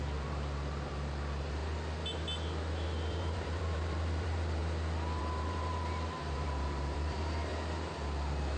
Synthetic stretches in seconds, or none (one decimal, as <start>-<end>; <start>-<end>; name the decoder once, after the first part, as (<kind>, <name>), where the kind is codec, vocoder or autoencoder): 0.0-1.6 (vocoder, BigVGAN v2); 3.1-4.6; 5.2-7.5